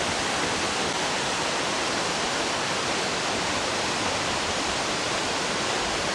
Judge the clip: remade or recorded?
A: recorded